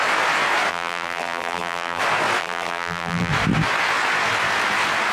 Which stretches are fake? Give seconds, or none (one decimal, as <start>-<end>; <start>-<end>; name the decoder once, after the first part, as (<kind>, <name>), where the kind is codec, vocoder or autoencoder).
0.7-2.0 (vocoder, BigVGAN v2); 2.4-3.3